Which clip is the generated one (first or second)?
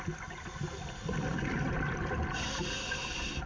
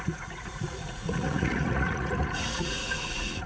second